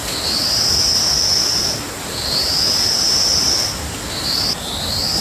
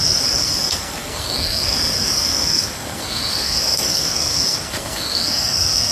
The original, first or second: first